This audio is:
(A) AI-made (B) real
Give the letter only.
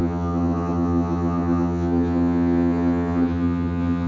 A